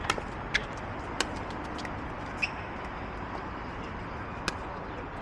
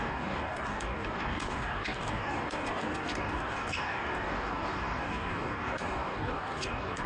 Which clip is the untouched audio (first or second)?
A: first